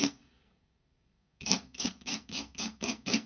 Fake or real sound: fake